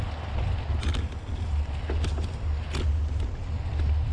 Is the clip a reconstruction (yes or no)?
no